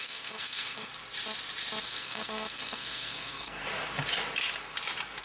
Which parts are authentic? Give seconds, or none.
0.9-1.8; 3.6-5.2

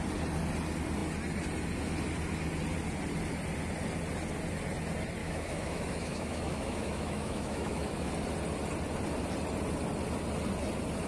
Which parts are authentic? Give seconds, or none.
0.0-5.2; 8.1-11.1

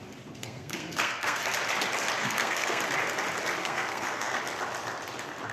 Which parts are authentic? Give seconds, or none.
0.0-0.4; 1.4-2.2; 2.8-3.6; 4.4-5.5

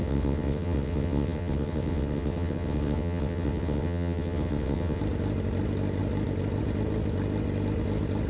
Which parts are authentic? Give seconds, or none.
5.0-8.3

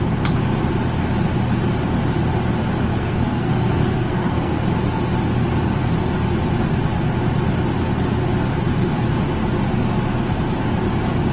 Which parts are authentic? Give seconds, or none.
0.0-2.9; 4.6-11.3

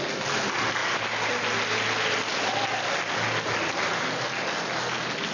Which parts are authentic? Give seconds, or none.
0.0-5.3

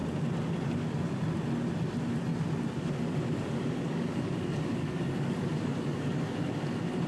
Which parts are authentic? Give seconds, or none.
0.0-3.3; 6.5-7.1